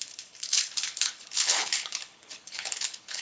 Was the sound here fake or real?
fake